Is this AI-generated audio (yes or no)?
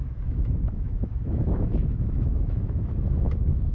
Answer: yes